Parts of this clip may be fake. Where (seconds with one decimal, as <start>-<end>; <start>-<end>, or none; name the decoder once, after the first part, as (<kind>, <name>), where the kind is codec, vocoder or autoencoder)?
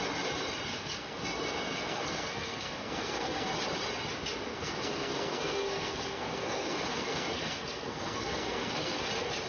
0.7-3.5 (codec, SNAC); 4.5-9.1